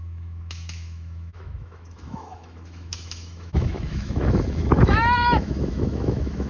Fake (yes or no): yes